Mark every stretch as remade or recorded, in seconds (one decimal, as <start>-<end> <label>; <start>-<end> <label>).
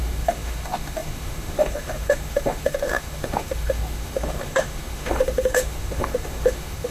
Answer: 0.0-6.9 remade